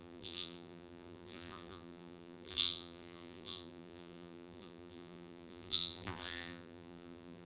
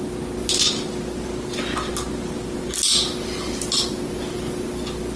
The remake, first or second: first